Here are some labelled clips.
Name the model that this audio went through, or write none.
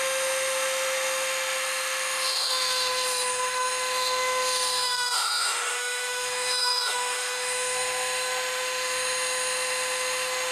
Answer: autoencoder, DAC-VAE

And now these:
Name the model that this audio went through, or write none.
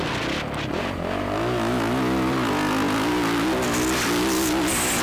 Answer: none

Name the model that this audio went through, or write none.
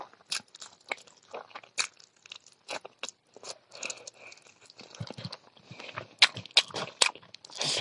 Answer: none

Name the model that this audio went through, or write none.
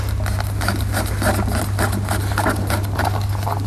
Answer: none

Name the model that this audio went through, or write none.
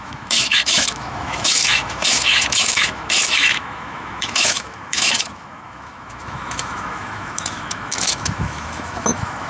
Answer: autoencoder, DAC-VAE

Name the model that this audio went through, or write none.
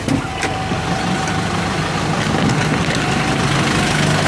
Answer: none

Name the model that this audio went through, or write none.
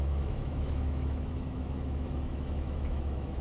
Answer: autoencoder, DAC-VAE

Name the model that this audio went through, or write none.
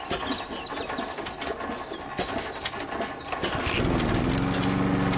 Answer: none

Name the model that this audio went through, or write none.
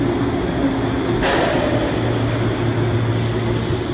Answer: none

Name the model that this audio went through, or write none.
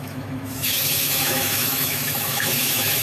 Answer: autoencoder, DAC-VAE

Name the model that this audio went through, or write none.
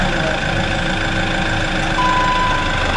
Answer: none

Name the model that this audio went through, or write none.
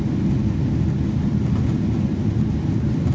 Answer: none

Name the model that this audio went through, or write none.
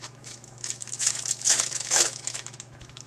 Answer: autoencoder, DAC-VAE